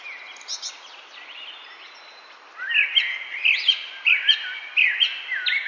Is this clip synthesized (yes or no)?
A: no